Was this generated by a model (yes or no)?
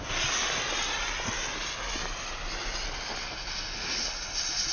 no